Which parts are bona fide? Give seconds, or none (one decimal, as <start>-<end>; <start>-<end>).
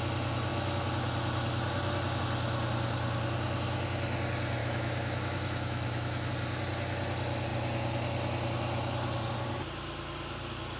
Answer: 0.0-4.6; 6.3-10.8